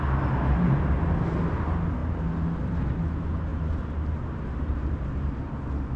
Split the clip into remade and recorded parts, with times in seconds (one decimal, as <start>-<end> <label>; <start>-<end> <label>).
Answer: 0.0-6.0 recorded